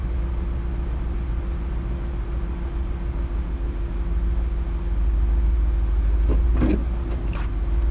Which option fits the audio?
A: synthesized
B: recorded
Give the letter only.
B